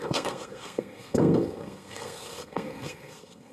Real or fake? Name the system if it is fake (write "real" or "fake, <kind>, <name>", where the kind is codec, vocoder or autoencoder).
fake, codec, SNAC